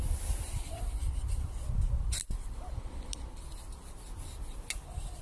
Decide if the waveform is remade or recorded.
recorded